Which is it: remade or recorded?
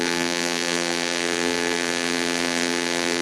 remade